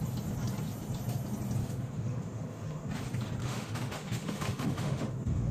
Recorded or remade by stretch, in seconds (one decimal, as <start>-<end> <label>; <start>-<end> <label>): 0.0-1.6 recorded; 1.6-2.9 remade; 2.9-3.4 recorded; 3.4-5.5 remade